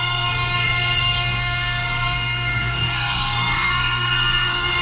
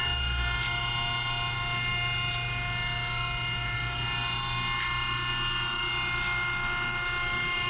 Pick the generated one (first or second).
first